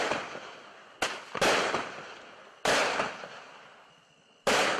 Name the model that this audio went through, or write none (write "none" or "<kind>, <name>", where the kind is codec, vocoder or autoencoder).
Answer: none